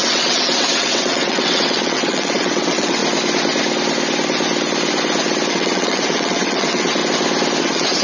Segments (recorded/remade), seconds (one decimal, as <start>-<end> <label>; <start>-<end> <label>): 0.0-3.0 remade; 3.0-5.5 recorded; 5.5-7.0 remade; 7.0-7.6 recorded; 7.6-8.0 remade